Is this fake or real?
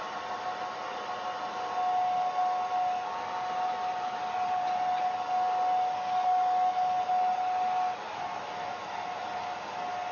real